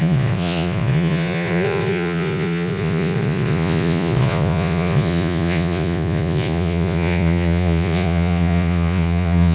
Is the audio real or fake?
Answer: fake